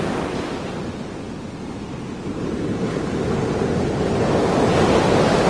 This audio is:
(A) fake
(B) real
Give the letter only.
B